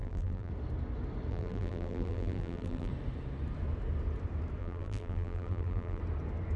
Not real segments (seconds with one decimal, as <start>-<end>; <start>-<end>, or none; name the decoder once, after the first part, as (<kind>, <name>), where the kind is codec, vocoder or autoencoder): 0.0-0.5 (vocoder, BigVGAN v2); 1.3-2.9; 4.6-6.0